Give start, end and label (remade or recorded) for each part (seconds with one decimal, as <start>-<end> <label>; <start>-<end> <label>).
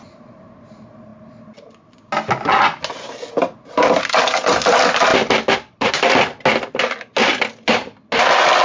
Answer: 0.0-5.1 recorded; 5.1-5.9 remade; 5.9-8.6 recorded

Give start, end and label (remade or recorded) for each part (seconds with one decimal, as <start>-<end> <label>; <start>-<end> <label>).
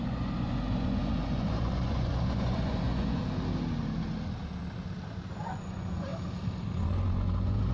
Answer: 0.0-3.2 remade; 3.2-5.3 recorded; 5.3-6.1 remade; 6.1-6.6 recorded; 6.6-7.7 remade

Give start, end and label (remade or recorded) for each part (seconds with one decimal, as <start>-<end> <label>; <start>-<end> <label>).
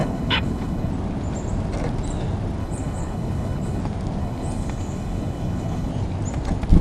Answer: 0.0-0.9 remade; 0.9-2.6 recorded; 2.6-3.8 remade; 3.8-4.2 recorded; 4.2-5.9 remade; 5.9-6.8 recorded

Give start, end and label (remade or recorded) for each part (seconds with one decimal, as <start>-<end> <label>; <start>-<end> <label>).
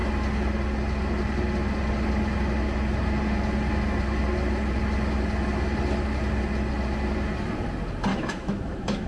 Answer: 0.0-8.1 recorded; 8.1-9.1 remade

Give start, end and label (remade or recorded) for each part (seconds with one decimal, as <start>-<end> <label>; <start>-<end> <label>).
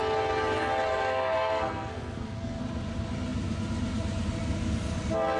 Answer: 0.0-0.9 recorded; 0.9-2.6 remade; 2.6-5.4 recorded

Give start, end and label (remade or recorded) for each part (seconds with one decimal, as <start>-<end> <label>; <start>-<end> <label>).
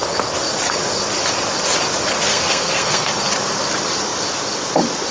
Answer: 0.0-2.3 recorded; 2.3-3.1 remade; 3.1-5.1 recorded